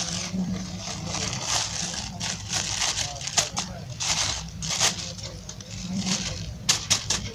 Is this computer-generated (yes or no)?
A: yes